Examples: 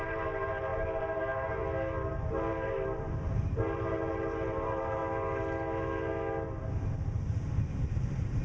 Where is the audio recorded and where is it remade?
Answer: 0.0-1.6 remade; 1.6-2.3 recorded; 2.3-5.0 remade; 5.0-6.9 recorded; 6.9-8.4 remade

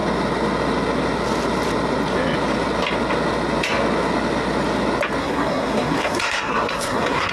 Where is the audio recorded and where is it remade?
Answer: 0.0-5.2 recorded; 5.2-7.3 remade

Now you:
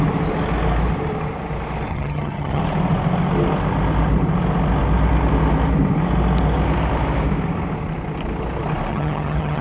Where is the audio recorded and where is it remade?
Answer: 0.0-1.9 recorded; 1.9-2.6 remade; 2.6-8.9 recorded; 8.9-9.6 remade

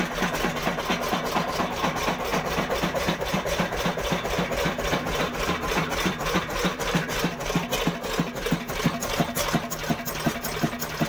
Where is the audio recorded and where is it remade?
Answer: 0.0-2.3 recorded; 2.3-7.2 remade; 7.2-11.1 recorded